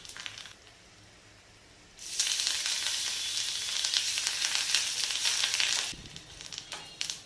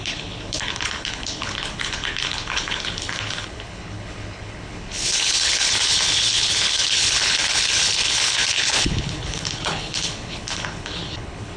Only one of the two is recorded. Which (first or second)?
first